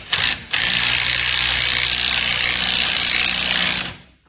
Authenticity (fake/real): real